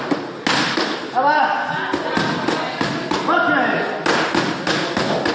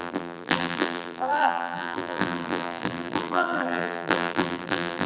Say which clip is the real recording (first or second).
first